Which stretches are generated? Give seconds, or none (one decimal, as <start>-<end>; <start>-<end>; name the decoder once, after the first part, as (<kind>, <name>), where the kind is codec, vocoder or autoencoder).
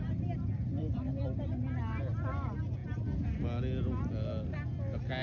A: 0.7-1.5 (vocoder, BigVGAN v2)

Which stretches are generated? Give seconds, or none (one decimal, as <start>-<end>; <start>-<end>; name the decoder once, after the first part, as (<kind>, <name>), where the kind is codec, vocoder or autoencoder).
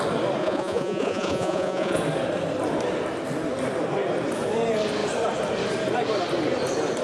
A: 0.4-2.0 (vocoder, Vocos)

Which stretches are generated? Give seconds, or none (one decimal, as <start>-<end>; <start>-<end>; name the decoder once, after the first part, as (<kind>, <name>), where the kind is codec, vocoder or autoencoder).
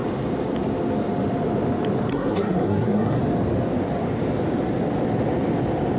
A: 2.1-3.2 (codec, SNAC)